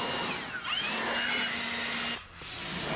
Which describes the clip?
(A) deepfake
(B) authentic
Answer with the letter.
B